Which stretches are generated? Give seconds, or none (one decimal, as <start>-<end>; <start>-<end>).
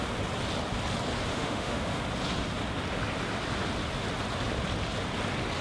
1.3-2.0